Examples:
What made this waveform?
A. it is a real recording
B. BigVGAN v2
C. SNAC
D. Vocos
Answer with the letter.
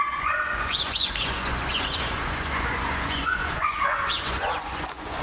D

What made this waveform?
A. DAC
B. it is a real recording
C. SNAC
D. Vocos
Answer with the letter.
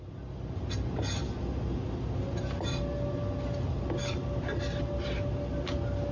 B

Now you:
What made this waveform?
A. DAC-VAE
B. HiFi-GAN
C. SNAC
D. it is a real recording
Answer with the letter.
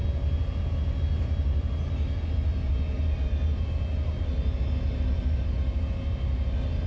D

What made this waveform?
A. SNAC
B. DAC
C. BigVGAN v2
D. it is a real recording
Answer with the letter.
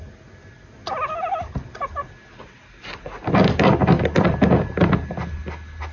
D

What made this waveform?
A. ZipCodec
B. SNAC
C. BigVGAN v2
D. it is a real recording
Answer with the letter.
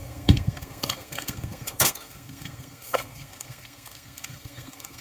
B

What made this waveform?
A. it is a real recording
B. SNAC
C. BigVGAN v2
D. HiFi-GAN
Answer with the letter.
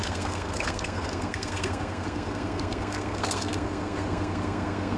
B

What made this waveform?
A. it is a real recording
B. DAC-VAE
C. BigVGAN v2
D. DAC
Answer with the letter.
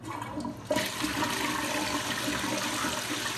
A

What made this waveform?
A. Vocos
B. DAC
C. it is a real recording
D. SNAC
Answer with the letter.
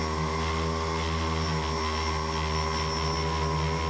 C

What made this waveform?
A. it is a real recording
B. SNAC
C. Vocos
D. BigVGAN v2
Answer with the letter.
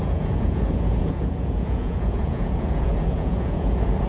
C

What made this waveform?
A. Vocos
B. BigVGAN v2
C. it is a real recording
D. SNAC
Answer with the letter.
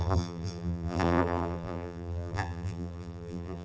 B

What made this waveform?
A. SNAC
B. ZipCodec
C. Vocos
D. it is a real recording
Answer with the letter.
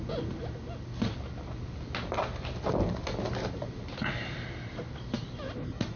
D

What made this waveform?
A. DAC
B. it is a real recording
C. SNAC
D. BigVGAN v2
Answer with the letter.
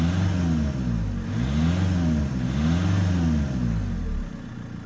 B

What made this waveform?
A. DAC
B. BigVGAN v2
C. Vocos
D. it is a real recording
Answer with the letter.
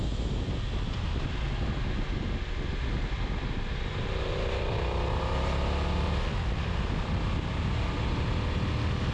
D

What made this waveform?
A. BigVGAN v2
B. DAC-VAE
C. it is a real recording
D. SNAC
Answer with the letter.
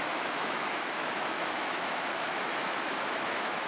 B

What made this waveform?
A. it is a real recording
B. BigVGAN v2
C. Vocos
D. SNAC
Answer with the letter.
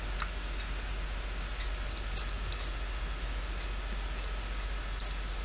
A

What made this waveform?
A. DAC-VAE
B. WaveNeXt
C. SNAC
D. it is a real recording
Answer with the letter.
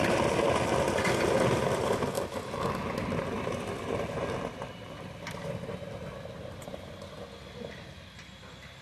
D